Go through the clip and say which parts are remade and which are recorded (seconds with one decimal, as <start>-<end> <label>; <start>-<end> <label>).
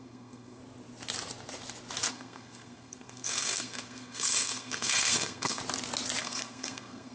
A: 0.0-0.6 remade; 0.6-2.1 recorded; 2.1-5.6 remade; 5.6-6.2 recorded; 6.2-7.1 remade